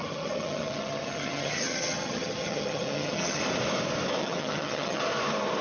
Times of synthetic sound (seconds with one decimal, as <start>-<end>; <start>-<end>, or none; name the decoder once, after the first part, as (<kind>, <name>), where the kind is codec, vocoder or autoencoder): 0.0-3.4 (vocoder, HiFi-GAN); 4.2-5.0